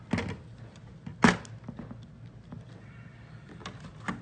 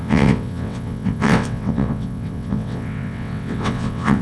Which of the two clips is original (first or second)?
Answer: first